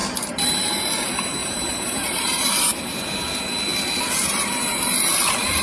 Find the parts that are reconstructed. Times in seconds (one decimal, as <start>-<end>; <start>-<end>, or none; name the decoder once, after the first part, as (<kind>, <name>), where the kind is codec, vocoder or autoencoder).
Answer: 0.0-0.8 (vocoder, BigVGAN v2); 1.4-3.0